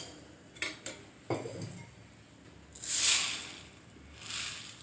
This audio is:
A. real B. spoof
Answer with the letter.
A